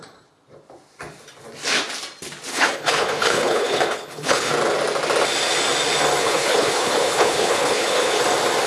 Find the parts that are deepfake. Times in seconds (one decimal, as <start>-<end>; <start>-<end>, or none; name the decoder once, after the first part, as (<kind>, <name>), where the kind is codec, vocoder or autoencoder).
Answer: 2.5-4.5 (codec, HILCodec); 6.2-8.2